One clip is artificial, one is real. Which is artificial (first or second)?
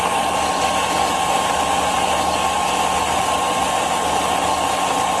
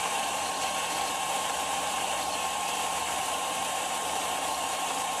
second